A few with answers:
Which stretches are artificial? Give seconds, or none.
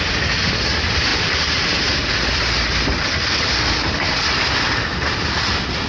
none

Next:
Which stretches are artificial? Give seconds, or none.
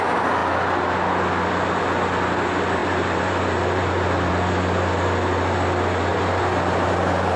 2.8-4.3 (vocoder, BigVGAN v2); 6.1-7.0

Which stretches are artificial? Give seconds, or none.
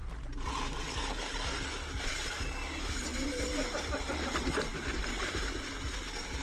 2.0-4.7 (vocoder, BigVGAN v2); 5.2-6.4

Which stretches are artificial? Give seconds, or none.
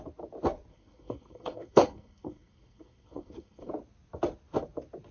0.7-3.7 (codec, SNAC)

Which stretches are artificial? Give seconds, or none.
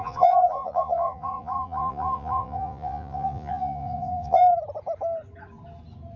0.0-4.4 (vocoder, Vocos)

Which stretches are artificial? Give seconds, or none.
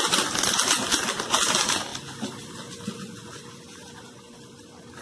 none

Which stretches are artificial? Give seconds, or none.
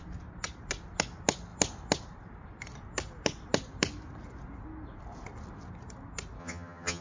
6.4-7.0 (vocoder, HiFi-GAN)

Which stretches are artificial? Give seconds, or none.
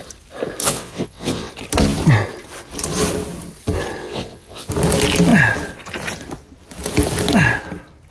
0.6-1.5 (vocoder, WaveNeXt); 4.0-4.7